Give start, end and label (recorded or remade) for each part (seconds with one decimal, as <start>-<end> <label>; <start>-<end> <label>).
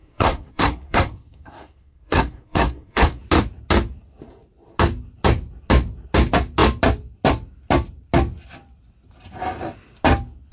0.0-3.2 remade; 3.2-10.5 recorded